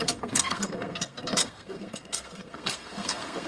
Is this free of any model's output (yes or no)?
no